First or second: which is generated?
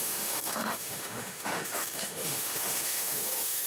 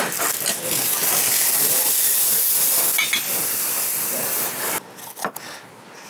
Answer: first